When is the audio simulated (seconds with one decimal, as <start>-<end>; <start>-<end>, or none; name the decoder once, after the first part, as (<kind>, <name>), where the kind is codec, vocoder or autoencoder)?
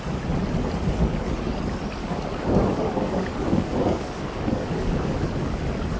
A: 2.0-5.6 (codec, DAC)